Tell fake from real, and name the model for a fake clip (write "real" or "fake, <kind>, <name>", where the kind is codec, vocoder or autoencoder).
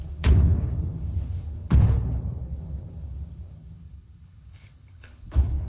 fake, codec, HILCodec